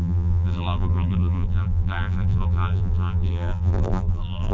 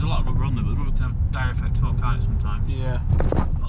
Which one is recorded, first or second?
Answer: second